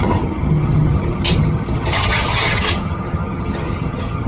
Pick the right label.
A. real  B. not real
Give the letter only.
B